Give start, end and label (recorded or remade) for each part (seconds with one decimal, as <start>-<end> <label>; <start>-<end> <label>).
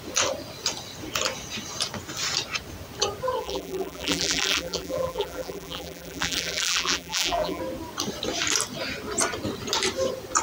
0.0-3.4 recorded; 3.4-7.6 remade; 7.6-10.4 recorded